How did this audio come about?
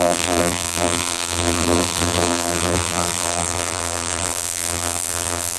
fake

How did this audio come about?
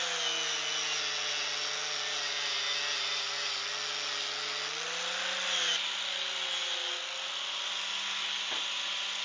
real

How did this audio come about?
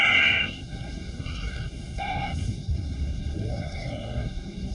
fake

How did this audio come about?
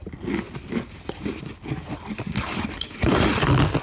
real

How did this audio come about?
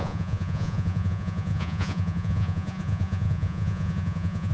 fake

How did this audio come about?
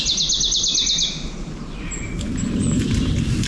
real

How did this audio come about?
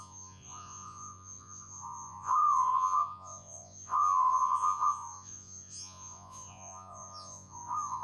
fake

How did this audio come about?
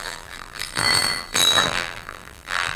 fake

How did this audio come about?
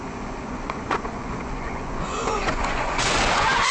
fake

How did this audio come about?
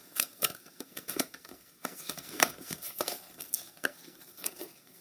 fake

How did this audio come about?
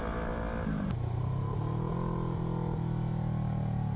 real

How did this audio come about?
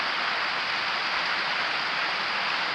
real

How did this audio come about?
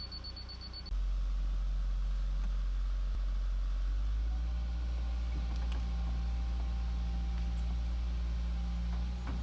real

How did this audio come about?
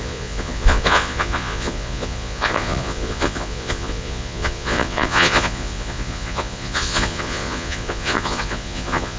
fake